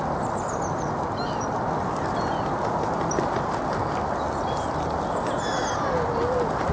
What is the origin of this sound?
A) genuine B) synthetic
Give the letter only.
A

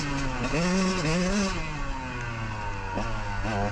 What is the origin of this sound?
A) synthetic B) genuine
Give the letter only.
B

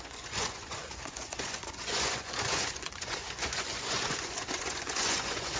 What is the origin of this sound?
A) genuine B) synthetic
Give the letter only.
B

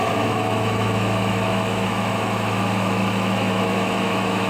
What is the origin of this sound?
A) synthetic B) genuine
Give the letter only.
A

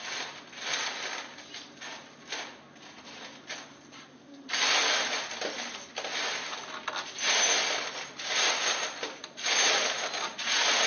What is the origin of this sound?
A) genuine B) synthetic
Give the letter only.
A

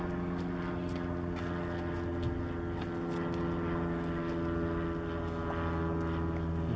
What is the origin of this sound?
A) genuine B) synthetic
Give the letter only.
A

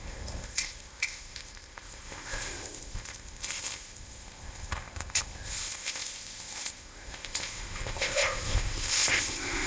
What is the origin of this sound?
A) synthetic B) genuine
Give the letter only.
A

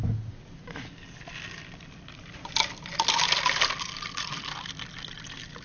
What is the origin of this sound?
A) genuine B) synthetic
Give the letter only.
A